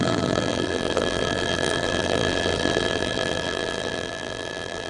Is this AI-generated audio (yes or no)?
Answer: yes